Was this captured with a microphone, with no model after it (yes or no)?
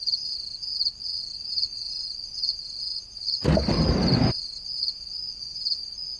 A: yes